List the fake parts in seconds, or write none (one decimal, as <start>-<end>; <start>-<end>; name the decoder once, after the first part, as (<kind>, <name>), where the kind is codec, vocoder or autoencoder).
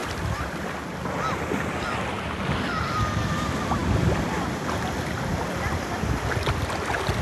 none